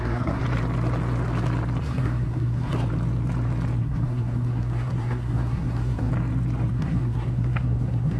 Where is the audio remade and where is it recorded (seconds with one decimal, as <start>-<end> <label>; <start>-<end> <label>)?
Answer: 0.0-0.4 remade; 0.4-1.8 recorded; 1.8-2.7 remade; 2.7-3.8 recorded; 3.8-6.1 remade; 6.1-6.7 recorded; 6.7-8.2 remade